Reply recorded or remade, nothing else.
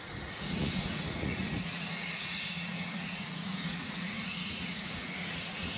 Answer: remade